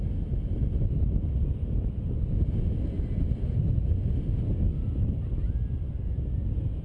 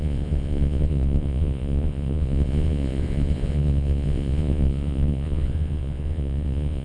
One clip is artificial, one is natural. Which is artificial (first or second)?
second